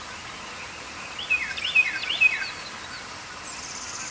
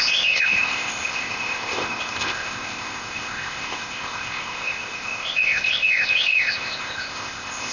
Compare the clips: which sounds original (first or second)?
first